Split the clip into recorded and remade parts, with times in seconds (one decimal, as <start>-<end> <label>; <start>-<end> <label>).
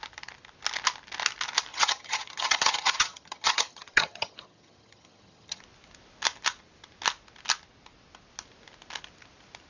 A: 0.0-1.7 recorded; 1.7-5.6 remade; 5.6-9.7 recorded